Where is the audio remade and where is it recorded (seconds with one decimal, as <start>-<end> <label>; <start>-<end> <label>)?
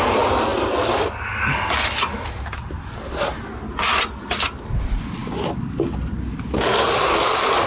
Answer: 0.0-7.7 recorded